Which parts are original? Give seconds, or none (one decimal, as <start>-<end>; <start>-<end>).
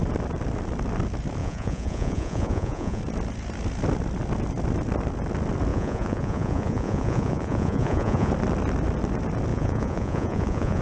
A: 0.0-1.4; 3.0-5.7; 8.3-9.5